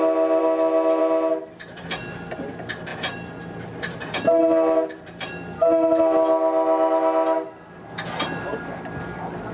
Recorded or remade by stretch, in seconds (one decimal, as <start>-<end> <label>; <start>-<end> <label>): 0.0-9.5 recorded